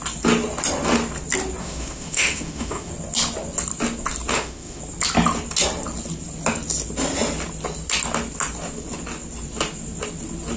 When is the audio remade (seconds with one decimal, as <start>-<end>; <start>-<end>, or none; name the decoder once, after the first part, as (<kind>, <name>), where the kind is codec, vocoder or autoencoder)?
1.6-2.9 (autoencoder, DAC-VAE); 4.3-4.8